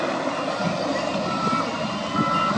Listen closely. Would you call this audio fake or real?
real